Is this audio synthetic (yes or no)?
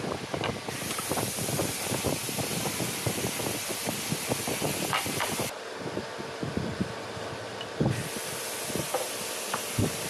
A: no